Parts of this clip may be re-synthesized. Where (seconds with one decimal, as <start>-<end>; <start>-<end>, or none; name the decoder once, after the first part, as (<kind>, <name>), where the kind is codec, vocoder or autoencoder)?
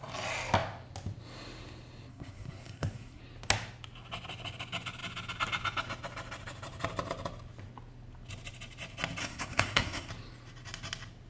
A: 2.1-3.2 (codec, SNAC); 9.2-10.1